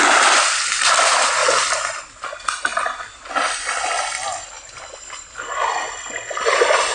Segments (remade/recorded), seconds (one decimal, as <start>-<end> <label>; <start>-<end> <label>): 0.0-6.9 recorded